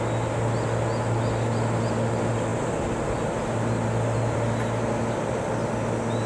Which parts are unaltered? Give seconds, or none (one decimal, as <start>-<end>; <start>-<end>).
0.0-6.3